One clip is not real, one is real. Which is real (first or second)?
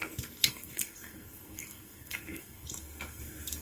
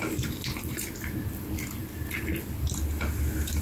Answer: second